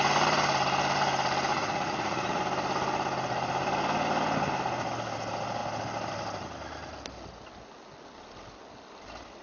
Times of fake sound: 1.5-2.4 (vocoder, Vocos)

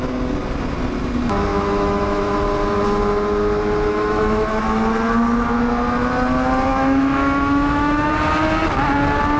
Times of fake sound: 1.5-2.3 (autoencoder, DAC-VAE); 3.9-4.6; 6.7-8.1

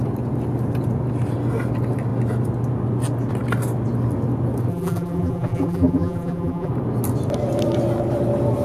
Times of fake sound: 4.7-6.7 (vocoder, BigVGAN v2)

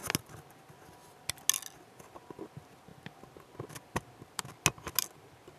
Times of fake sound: none

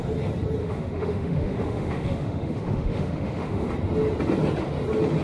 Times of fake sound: 0.6-3.7 (autoencoder, DAC-VAE)

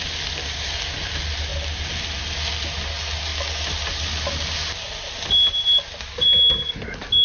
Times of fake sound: none

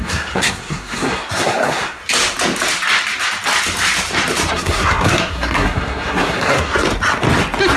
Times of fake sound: 0.0-2.0 (codec, SNAC); 4.5-6.7